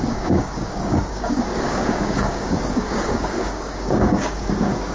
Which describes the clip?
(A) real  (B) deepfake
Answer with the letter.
B